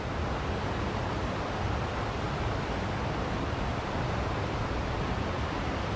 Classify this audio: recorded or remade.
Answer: recorded